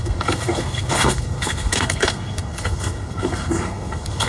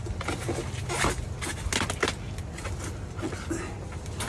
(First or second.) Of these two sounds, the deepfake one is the first